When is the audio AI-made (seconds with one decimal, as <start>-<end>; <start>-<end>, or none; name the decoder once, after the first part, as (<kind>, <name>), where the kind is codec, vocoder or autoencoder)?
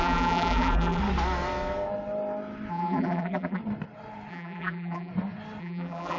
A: 0.0-1.0 (vocoder, BigVGAN v2); 2.7-3.6; 4.3-5.1; 5.6-6.2